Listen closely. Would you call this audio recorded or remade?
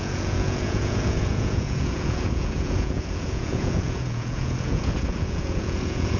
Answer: remade